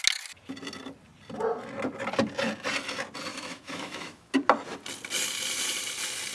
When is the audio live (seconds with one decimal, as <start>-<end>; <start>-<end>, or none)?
0.0-3.3; 4.3-6.3